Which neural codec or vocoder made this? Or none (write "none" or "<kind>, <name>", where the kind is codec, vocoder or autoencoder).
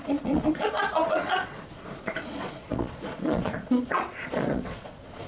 vocoder, Vocos